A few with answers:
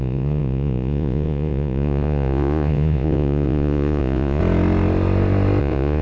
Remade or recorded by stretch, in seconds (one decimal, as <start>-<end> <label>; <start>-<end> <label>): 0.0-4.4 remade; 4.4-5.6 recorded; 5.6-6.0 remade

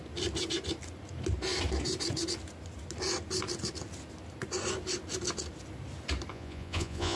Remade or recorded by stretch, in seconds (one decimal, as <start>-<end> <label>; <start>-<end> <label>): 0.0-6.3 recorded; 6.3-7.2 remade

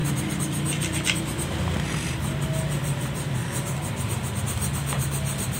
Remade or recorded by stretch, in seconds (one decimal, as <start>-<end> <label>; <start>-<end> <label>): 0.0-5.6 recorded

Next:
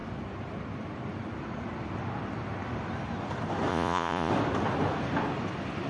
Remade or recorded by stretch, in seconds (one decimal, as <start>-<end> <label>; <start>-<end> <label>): 0.0-3.7 recorded; 3.7-4.3 remade; 4.3-5.9 recorded